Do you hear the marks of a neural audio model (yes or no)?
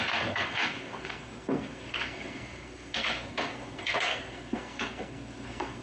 yes